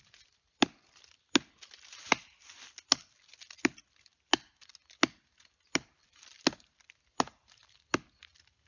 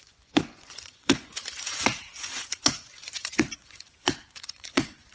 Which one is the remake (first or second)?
second